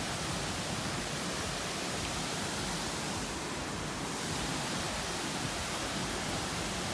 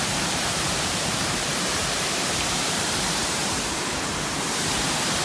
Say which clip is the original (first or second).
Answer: first